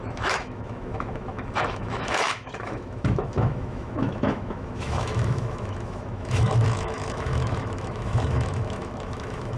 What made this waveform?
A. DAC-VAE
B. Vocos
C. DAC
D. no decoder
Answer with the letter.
A